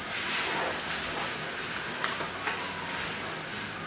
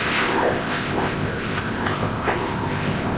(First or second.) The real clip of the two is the first